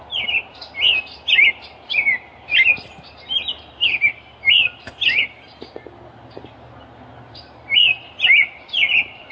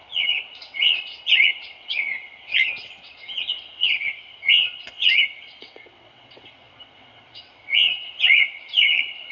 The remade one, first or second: second